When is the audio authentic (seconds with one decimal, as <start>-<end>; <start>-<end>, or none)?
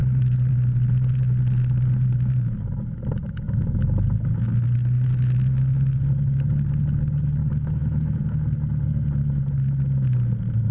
0.5-7.4; 8.4-10.7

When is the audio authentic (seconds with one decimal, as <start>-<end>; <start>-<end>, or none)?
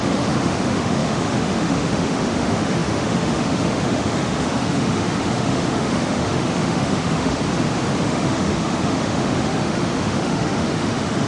7.4-8.0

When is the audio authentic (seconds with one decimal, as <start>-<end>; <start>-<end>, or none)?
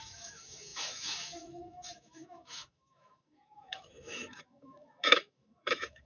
none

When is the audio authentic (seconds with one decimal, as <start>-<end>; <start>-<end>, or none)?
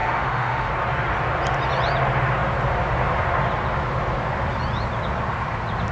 0.7-5.9